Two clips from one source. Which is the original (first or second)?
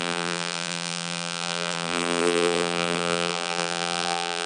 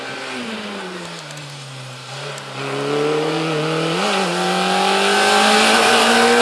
second